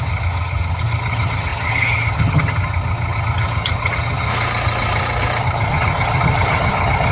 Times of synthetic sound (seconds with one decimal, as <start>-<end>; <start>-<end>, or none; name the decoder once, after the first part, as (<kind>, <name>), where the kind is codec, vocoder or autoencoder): 0.0-4.3 (vocoder, HiFi-GAN); 5.4-7.1